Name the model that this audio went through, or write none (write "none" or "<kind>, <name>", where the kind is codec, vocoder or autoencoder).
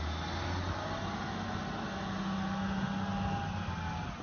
none